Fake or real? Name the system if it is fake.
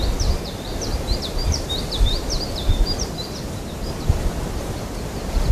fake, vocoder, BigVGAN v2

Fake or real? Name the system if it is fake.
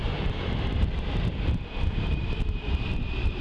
fake, vocoder, BigVGAN v2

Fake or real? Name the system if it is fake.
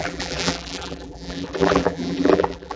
fake, vocoder, BigVGAN v2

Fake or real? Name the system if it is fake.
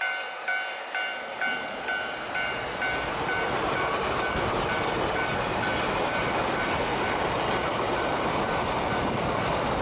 fake, vocoder, BigVGAN v2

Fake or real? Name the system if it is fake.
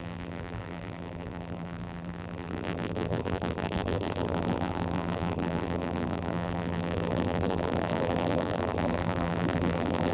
fake, vocoder, BigVGAN v2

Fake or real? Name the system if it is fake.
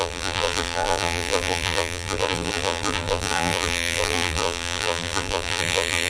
fake, vocoder, BigVGAN v2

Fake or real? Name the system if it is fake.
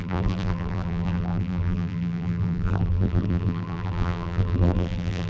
fake, vocoder, BigVGAN v2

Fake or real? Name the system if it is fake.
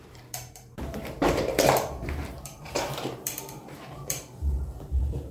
fake, vocoder, BigVGAN v2